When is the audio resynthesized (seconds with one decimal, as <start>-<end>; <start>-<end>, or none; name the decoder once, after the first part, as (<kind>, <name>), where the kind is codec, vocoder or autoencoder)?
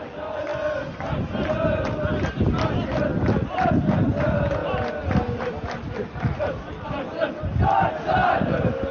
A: 8.2-8.9 (vocoder, BigVGAN v2)